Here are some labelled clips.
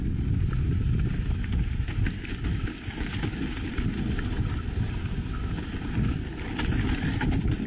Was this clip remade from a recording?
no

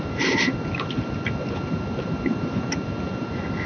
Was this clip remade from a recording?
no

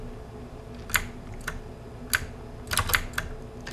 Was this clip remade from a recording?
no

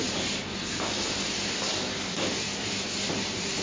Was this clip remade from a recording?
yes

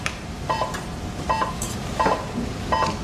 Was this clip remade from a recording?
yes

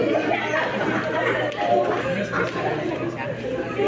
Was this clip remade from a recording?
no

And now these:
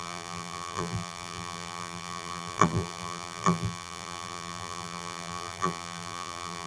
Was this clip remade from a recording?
yes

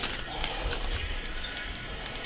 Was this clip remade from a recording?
yes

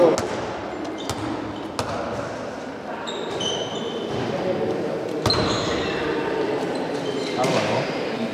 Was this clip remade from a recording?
no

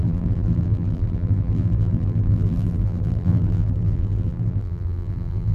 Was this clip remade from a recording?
yes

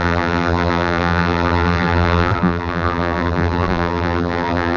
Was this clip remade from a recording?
yes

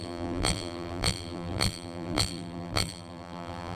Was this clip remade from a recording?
yes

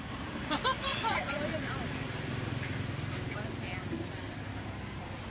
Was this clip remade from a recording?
no